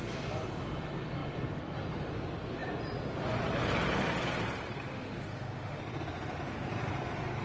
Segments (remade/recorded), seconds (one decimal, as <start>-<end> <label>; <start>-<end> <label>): 0.0-4.9 recorded; 4.9-5.8 remade; 5.8-7.4 recorded